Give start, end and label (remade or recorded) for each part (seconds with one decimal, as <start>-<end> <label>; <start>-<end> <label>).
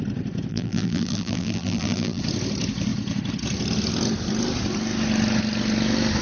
0.0-0.5 recorded; 0.5-2.2 remade; 2.2-6.2 recorded